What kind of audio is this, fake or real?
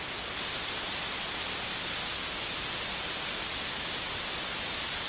real